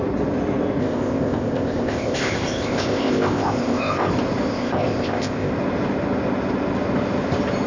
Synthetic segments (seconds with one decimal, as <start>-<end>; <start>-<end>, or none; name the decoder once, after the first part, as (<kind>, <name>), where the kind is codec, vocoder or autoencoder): 0.8-4.1 (codec, ZipCodec); 4.5-5.5